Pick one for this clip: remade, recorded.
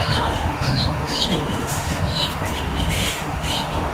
remade